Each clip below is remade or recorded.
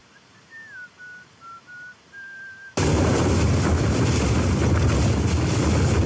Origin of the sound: recorded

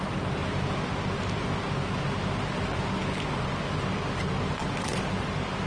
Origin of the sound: recorded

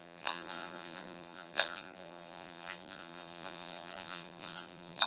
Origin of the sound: remade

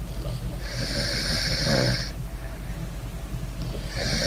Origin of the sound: recorded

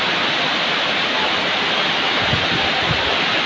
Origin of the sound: recorded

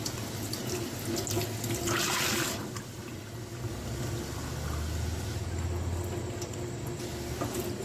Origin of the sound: recorded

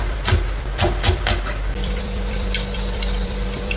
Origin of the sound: remade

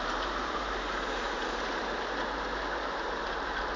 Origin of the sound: remade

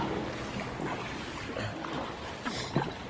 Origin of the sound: recorded